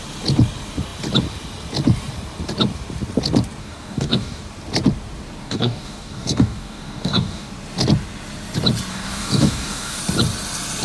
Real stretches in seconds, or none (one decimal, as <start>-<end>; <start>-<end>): 0.0-3.6; 4.4-5.4; 7.5-8.9; 10.0-10.8